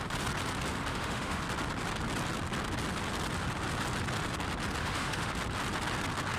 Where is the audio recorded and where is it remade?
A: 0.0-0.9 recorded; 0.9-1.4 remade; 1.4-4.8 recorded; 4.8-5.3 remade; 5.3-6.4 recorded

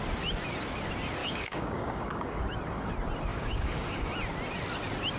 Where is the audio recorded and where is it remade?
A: 0.0-1.2 recorded; 1.2-2.4 remade; 2.4-3.3 recorded; 3.3-4.1 remade; 4.1-5.2 recorded

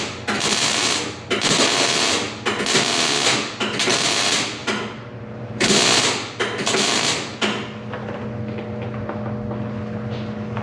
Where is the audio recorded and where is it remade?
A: 0.0-4.6 recorded; 4.6-6.0 remade; 6.0-10.6 recorded

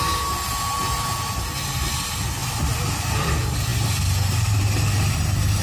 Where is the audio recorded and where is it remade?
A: 0.0-2.4 recorded; 2.4-3.2 remade; 3.2-5.6 recorded

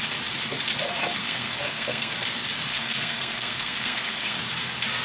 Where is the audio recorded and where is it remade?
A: 0.0-1.2 recorded; 1.2-2.1 remade; 2.1-2.7 recorded; 2.7-4.4 remade; 4.4-5.0 recorded